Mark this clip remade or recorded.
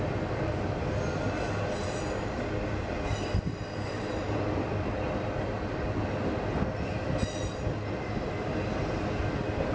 recorded